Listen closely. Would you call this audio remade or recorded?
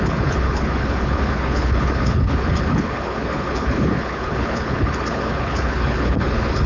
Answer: remade